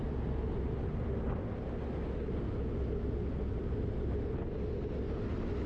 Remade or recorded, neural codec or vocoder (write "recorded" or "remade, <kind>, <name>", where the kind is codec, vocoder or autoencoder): recorded